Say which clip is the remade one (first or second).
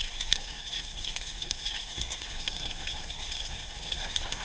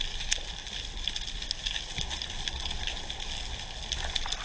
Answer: first